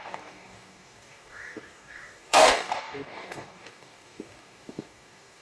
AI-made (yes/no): yes